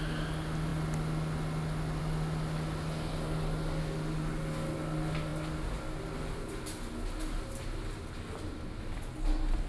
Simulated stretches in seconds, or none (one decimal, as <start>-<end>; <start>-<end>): none